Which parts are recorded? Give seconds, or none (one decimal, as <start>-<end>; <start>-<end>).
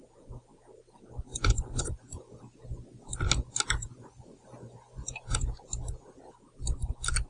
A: 0.0-1.3; 2.4-3.8; 5.5-7.3